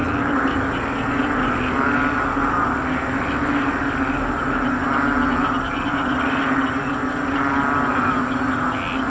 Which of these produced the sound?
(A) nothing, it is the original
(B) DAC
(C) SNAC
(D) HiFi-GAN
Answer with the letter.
A